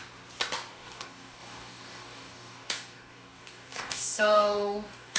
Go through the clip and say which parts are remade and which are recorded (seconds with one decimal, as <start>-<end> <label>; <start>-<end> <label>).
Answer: 0.0-0.7 recorded; 0.7-5.2 remade